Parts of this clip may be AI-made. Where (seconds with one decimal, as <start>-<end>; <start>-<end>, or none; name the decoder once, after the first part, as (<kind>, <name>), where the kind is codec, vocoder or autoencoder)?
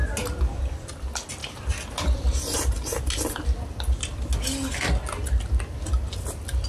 none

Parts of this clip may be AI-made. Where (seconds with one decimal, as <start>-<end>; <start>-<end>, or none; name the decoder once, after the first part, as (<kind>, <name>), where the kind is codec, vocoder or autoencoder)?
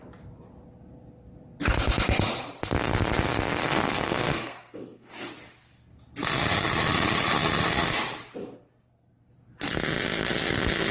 3.6-5.1 (codec, SNAC)